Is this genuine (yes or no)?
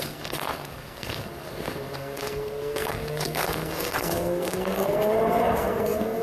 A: no